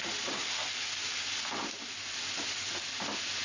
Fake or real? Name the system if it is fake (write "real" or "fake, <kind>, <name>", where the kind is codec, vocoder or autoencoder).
real